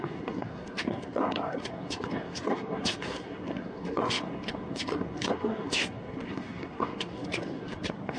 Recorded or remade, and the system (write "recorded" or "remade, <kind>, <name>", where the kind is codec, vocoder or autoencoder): remade, codec, SNAC